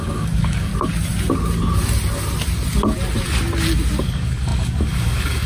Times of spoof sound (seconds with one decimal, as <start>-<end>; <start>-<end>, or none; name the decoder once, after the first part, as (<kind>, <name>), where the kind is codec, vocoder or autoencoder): 0.0-0.7 (codec, DAC); 4.0-5.5